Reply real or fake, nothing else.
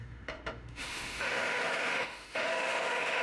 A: fake